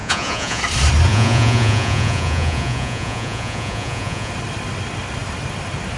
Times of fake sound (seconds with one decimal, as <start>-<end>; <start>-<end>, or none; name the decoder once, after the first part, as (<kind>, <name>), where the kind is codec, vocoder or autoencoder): 0.0-0.6 (vocoder, Vocos); 1.1-4.3